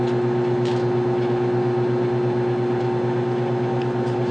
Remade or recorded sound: recorded